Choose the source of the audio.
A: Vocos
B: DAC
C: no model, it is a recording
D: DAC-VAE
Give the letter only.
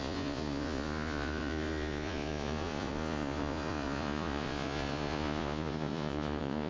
A